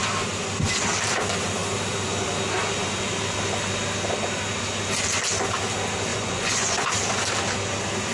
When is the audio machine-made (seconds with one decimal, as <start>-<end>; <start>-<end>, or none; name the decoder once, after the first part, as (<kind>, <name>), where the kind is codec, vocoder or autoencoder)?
6.1-6.9 (vocoder, Vocos)

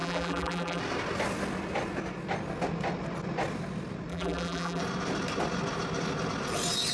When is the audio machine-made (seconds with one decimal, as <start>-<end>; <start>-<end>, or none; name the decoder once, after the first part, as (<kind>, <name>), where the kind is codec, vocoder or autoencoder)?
0.0-0.8 (vocoder, BigVGAN v2); 4.1-4.8

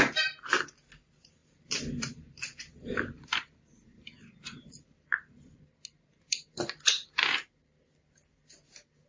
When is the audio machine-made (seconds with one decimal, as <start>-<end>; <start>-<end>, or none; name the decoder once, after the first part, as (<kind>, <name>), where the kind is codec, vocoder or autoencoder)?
1.4-5.6 (vocoder, BigVGAN v2); 6.1-7.2

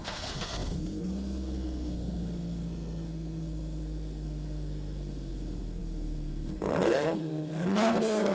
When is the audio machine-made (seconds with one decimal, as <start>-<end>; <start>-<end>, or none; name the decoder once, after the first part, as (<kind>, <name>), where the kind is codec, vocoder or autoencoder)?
0.0-8.3 (codec, SNAC)